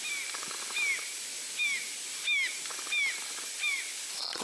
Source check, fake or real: real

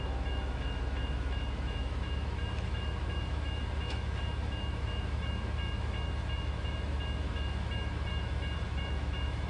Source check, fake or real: fake